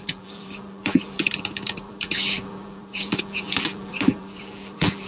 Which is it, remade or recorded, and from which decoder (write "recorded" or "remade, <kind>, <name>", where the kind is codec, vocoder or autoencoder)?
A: remade, vocoder, BigVGAN v2